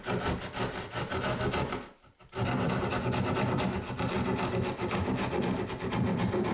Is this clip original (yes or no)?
yes